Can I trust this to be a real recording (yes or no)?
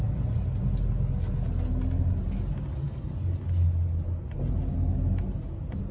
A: yes